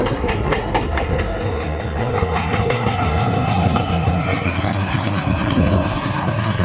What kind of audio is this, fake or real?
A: fake